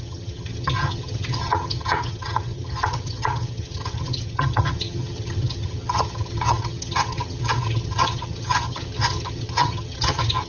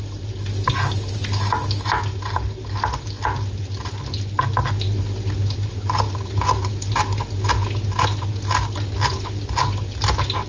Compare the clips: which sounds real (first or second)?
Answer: second